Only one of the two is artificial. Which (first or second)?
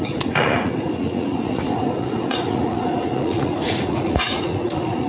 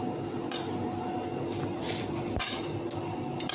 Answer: first